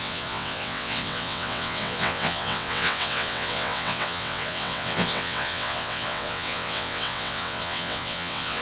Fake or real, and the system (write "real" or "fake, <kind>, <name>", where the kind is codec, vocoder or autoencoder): fake, vocoder, WaveNeXt